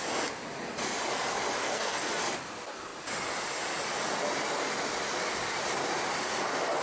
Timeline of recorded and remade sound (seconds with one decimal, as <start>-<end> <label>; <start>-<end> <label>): 0.0-1.6 recorded; 1.6-2.1 remade; 2.1-6.8 recorded